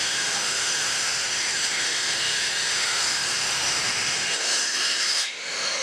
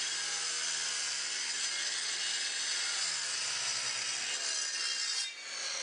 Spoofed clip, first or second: first